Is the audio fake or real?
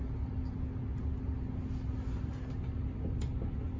real